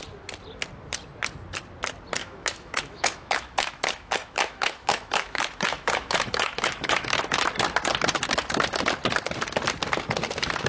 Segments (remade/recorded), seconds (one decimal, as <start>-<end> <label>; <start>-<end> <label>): 0.0-2.2 recorded; 2.2-7.2 remade; 7.2-10.7 recorded

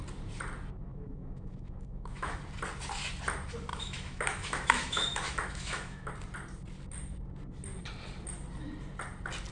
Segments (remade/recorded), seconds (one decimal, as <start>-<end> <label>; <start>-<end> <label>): 0.0-0.9 recorded; 0.9-2.4 remade; 2.4-3.7 recorded; 3.7-6.1 remade; 6.1-9.5 recorded